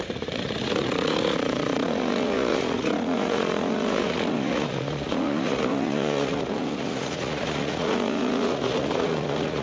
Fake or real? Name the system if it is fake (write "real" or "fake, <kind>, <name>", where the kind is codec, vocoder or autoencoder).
fake, vocoder, Vocos